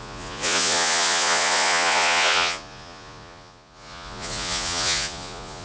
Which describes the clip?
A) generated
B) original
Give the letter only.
A